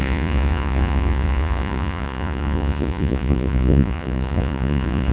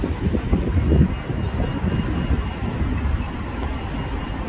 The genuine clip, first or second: second